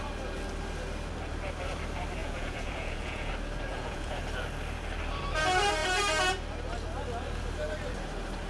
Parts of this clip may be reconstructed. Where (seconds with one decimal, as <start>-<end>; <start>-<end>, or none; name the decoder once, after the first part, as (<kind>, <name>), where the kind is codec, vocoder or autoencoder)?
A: 2.2-3.3 (vocoder, Vocos); 3.7-4.2